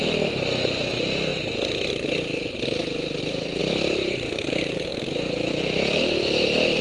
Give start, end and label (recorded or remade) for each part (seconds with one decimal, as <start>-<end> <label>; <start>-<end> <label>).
0.0-6.8 recorded